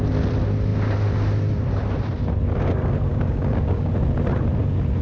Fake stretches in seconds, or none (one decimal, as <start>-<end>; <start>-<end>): 3.1-3.9

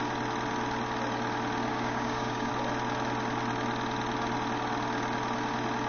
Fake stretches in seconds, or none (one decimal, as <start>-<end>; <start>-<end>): 1.7-2.5

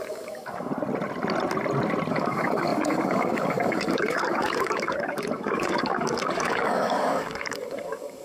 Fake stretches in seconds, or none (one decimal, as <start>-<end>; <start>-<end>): 0.0-0.7; 2.1-8.2